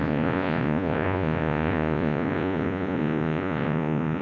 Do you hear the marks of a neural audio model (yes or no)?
yes